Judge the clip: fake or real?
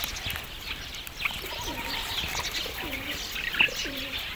real